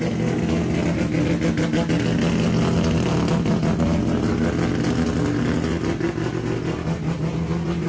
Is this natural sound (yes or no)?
yes